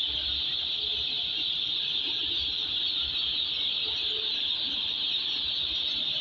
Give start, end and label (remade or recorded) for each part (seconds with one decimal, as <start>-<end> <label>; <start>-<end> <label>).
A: 0.0-6.2 recorded